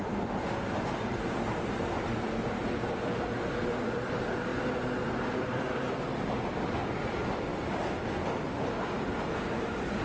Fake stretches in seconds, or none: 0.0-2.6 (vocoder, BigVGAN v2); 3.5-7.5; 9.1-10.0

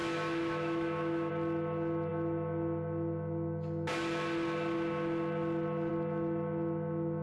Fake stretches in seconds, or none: 0.0-1.3 (autoencoder, DAC-VAE)

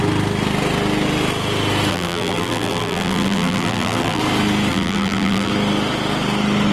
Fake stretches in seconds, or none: 1.9-4.2 (vocoder, BigVGAN v2); 4.7-5.5

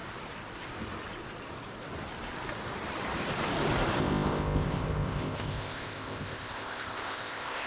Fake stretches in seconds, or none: 4.0-7.7 (codec, ZipCodec)

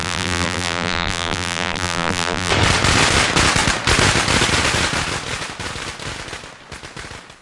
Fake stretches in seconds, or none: 0.0-2.5 (vocoder, BigVGAN v2)

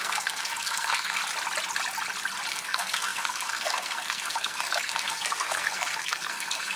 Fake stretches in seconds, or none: 0.0-1.2 (codec, SNAC); 2.5-6.8